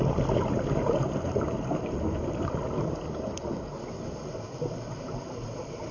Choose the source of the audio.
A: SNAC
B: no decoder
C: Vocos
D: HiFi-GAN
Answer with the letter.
B